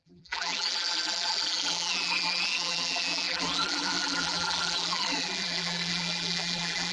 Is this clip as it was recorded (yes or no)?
no